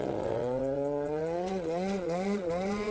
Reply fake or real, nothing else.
fake